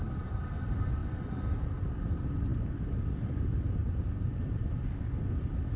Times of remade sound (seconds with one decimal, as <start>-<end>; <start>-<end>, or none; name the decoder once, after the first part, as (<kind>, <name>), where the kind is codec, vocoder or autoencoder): none